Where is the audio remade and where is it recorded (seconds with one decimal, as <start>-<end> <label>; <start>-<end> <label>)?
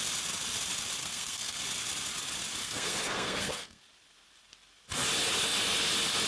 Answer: 0.0-1.0 recorded; 1.0-1.6 remade; 1.6-2.6 recorded; 2.6-3.8 remade; 3.8-6.3 recorded